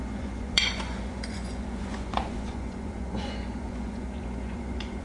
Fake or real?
fake